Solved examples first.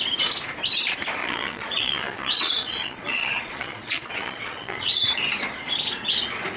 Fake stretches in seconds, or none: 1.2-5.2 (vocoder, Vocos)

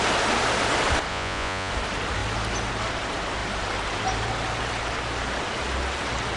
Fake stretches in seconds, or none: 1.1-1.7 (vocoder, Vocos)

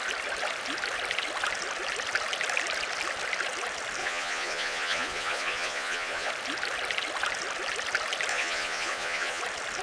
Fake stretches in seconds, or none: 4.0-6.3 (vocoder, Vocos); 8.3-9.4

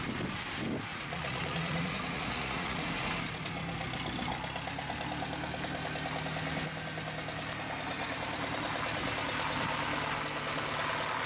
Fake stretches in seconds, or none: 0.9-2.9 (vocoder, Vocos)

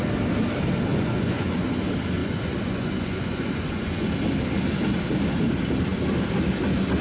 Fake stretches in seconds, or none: 0.9-1.7 (vocoder, Vocos); 2.2-4.1